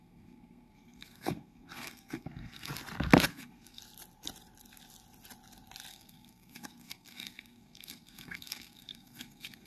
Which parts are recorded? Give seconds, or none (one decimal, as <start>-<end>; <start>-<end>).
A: 2.7-3.3; 3.8-5.9